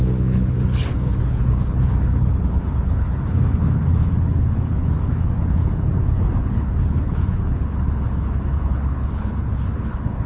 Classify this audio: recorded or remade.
remade